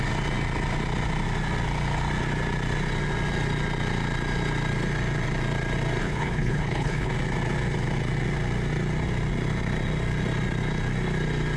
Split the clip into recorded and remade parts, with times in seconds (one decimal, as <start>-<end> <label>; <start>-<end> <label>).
0.0-6.0 recorded; 6.0-7.1 remade; 7.1-11.6 recorded